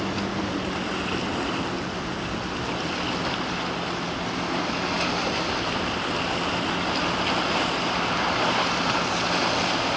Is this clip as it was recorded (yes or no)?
yes